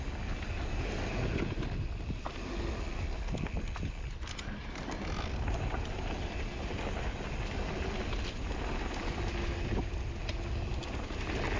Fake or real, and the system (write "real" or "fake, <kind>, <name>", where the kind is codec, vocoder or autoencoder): real